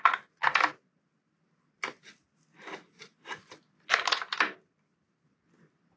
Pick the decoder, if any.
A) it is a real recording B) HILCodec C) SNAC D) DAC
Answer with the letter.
A